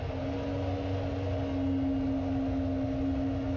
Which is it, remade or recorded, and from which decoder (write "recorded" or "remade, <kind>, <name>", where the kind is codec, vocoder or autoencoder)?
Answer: recorded